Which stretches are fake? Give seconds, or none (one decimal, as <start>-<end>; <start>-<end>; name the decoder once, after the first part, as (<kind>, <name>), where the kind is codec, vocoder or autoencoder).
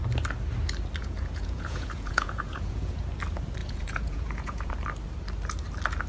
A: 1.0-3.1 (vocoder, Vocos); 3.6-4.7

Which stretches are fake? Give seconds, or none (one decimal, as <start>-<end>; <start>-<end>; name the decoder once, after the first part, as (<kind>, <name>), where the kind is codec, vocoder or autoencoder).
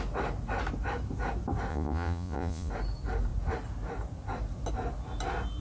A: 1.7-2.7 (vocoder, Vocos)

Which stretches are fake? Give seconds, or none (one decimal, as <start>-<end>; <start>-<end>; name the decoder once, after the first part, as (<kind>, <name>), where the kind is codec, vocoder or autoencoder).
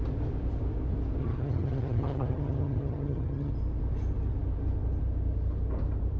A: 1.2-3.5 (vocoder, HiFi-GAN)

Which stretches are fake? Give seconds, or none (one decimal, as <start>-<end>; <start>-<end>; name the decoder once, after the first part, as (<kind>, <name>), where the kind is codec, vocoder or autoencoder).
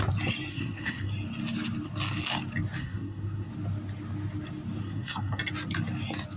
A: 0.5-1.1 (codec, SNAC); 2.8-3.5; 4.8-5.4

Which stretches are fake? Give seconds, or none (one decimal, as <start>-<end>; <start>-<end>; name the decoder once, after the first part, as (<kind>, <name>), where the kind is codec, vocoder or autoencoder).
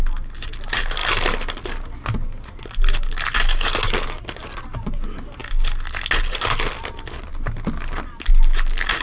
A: 1.0-1.6 (vocoder, BigVGAN v2)